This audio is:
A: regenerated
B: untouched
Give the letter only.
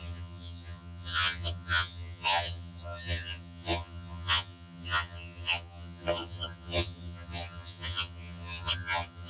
A